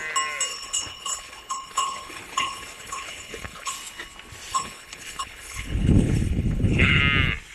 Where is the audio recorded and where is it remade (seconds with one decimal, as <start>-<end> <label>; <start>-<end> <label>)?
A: 0.0-0.5 recorded; 0.5-3.7 remade; 3.7-4.5 recorded; 4.5-7.0 remade; 7.0-7.5 recorded